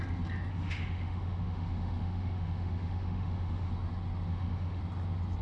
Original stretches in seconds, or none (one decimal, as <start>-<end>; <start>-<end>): 0.0-0.5; 3.7-4.3; 4.8-5.4